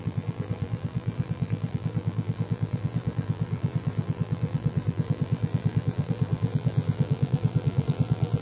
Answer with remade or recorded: remade